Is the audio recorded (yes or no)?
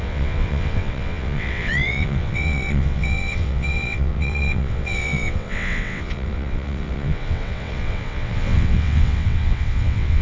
no